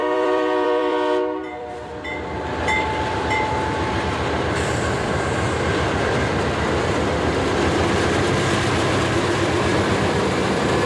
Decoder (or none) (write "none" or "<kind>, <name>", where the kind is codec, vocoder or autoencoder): vocoder, BigVGAN v2